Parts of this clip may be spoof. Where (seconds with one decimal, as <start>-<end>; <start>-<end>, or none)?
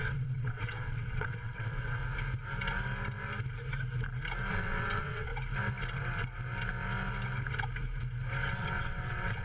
0.0-2.0; 4.5-5.3; 8.5-9.4